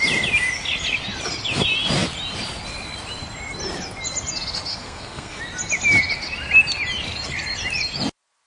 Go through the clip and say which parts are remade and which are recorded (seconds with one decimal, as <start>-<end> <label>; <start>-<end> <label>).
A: 0.0-4.7 recorded; 4.7-5.4 remade; 5.4-8.5 recorded